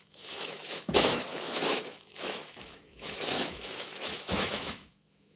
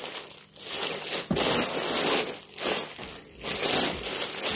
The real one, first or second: second